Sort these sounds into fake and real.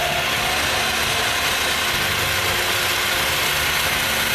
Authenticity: real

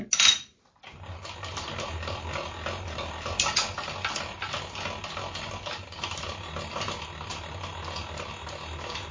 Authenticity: real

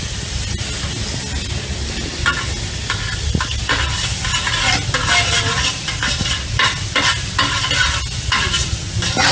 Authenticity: real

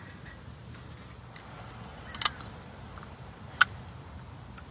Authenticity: real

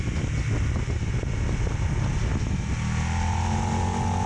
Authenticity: real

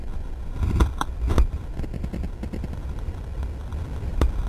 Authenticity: fake